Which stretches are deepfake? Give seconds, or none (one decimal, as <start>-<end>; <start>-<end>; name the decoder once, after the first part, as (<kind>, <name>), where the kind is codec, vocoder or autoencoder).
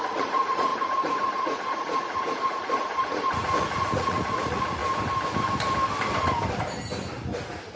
0.0-4.8 (vocoder, Vocos)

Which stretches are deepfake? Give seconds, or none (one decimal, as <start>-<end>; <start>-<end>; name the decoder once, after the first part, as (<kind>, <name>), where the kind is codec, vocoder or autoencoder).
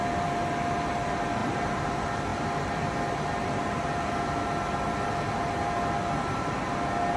1.4-1.9 (vocoder, BigVGAN v2); 2.3-2.9; 3.4-4.2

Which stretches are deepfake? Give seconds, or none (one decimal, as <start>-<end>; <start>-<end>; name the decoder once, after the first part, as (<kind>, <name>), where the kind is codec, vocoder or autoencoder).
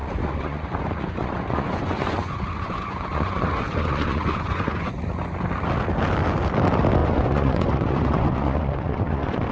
0.0-4.9 (vocoder, Vocos); 7.0-9.5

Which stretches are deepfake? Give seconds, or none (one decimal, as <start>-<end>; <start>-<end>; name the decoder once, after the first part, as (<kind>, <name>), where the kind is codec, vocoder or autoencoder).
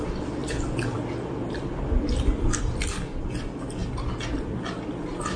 none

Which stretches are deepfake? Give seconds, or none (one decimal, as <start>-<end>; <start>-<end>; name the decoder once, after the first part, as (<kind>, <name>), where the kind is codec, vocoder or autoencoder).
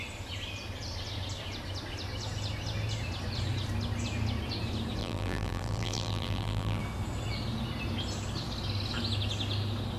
5.0-6.8 (vocoder, BigVGAN v2)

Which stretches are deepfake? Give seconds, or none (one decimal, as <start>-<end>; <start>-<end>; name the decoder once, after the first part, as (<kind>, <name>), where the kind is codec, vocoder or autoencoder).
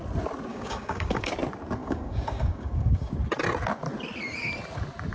0.5-1.3 (codec, DAC); 1.8-3.1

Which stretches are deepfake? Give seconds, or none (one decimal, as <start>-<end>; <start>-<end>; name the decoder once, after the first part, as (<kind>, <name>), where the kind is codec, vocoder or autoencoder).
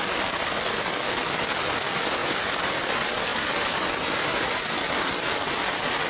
2.2-2.7 (vocoder, BigVGAN v2); 3.3-5.1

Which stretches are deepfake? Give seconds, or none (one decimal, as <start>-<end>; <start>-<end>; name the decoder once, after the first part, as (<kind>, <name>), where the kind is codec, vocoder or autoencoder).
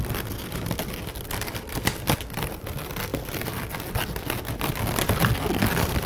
0.0-6.1 (vocoder, BigVGAN v2)